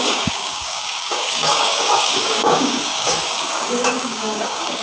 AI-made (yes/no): yes